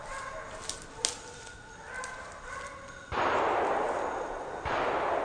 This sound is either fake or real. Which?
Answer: real